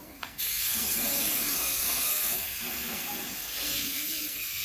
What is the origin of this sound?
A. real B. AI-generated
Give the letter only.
B